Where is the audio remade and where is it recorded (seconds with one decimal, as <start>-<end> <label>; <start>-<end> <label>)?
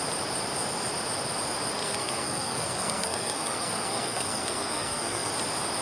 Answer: 0.0-1.8 recorded; 1.8-5.3 remade; 5.3-5.8 recorded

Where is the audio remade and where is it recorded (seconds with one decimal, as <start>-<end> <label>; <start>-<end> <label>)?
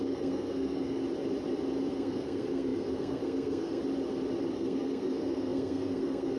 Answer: 0.0-1.0 remade; 1.0-1.9 recorded; 1.9-3.8 remade; 3.8-4.5 recorded; 4.5-6.4 remade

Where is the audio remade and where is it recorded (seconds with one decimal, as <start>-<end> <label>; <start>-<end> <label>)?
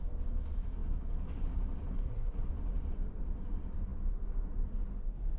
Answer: 0.0-1.9 recorded; 1.9-2.5 remade; 2.5-5.4 recorded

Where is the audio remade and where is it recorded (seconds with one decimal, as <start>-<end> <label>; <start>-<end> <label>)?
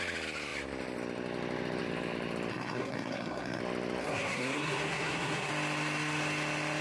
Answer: 0.0-2.5 recorded; 2.5-3.6 remade; 3.6-4.0 recorded; 4.0-5.5 remade; 5.5-6.8 recorded